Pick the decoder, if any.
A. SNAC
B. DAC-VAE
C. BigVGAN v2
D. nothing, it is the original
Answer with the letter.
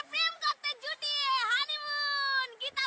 D